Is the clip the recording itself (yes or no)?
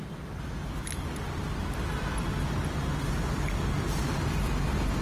yes